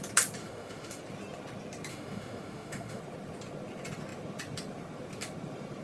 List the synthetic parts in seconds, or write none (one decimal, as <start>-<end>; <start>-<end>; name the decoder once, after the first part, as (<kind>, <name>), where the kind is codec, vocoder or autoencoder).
0.4-1.0 (autoencoder, DAC-VAE); 1.9-3.0